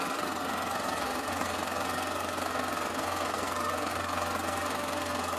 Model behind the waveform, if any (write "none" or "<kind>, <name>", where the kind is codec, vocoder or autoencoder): codec, SNAC